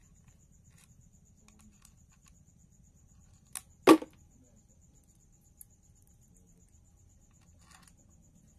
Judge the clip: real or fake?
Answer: real